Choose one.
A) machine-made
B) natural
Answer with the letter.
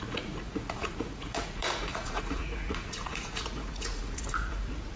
A